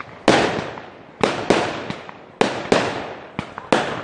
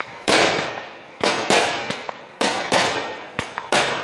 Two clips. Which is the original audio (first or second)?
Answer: first